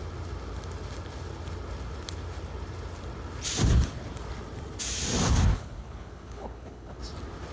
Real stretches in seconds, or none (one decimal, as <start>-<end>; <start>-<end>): 0.0-5.5; 7.0-7.5